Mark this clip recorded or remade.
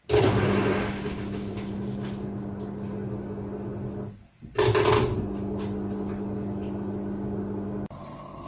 recorded